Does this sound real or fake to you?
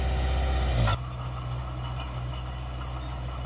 real